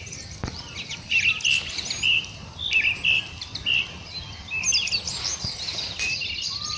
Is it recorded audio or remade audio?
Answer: recorded